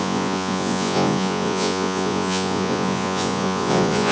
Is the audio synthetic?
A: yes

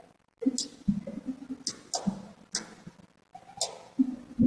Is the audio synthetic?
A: no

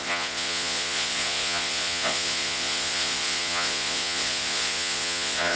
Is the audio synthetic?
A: yes